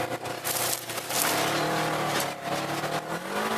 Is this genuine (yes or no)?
yes